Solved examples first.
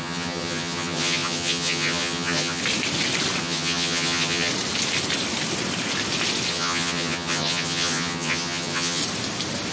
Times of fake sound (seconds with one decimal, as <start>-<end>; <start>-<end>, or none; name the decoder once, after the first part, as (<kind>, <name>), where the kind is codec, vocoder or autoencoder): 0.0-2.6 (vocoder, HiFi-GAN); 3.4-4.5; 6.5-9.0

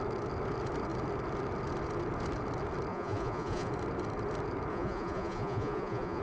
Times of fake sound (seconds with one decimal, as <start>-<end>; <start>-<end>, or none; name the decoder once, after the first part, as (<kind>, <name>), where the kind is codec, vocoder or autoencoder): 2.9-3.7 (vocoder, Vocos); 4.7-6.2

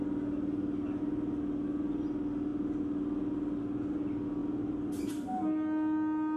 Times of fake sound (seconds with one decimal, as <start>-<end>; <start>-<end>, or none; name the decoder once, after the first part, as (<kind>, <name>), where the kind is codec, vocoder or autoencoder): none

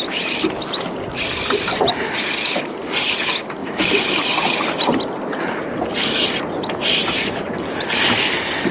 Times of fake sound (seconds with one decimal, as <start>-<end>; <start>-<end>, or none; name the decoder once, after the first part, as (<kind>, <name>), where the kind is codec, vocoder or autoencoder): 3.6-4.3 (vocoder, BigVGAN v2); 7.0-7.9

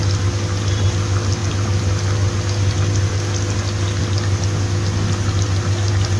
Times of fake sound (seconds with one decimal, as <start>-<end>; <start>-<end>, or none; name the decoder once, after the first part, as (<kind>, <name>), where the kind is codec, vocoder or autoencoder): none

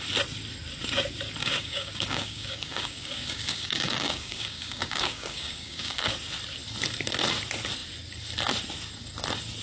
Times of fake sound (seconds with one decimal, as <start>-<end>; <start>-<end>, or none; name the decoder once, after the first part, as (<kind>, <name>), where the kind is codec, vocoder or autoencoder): 1.4-6.1 (codec, DAC)